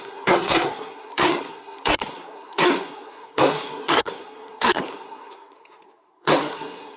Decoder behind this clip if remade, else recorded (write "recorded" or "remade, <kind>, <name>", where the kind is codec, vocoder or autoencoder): remade, codec, SNAC